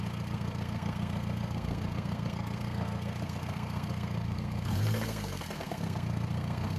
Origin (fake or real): fake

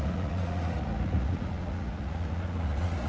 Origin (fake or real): fake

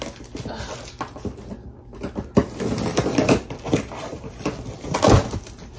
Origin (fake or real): real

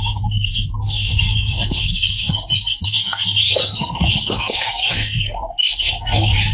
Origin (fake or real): fake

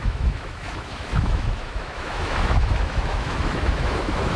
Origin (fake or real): fake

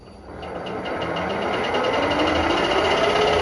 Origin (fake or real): real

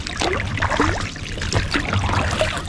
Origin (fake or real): real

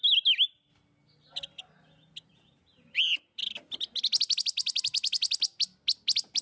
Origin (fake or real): real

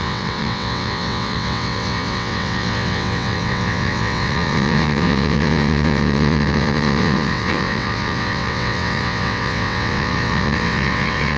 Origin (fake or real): fake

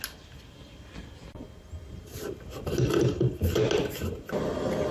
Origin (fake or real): real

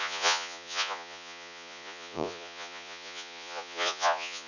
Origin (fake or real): fake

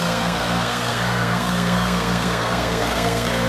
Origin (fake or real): fake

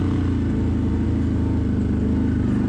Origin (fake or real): real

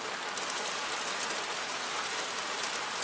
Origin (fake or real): real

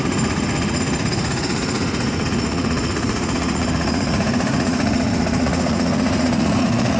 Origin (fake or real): fake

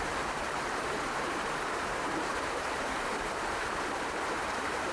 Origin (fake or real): fake